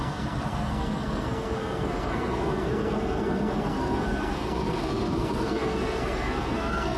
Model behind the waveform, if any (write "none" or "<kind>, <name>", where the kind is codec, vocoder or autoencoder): codec, SNAC